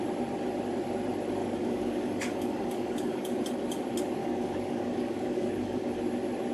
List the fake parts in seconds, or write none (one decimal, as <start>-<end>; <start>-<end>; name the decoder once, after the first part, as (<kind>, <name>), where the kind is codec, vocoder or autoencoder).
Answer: 1.4-3.4 (codec, DAC); 4.2-6.0